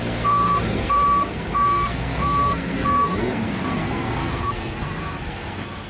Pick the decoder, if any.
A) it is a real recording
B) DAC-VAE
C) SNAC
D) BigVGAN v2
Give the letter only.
C